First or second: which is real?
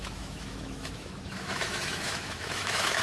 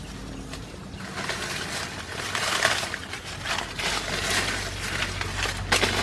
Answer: second